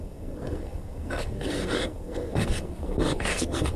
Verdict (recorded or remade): remade